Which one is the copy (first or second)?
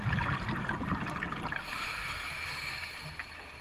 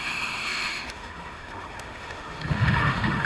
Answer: second